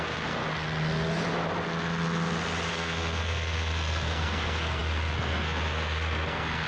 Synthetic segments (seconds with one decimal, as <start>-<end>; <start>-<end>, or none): 0.0-0.4; 2.7-6.7